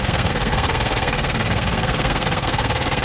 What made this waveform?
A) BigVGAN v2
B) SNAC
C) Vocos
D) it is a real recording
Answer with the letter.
B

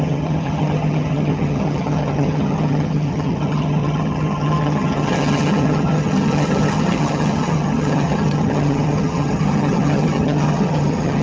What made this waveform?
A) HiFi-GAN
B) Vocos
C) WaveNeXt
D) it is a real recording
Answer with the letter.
A